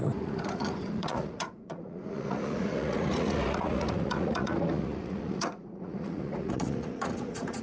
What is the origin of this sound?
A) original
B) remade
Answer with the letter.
B